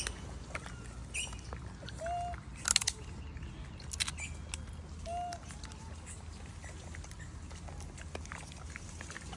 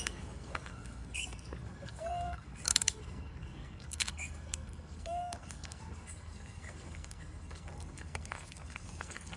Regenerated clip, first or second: second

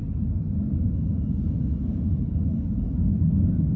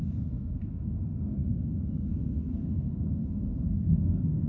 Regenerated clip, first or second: second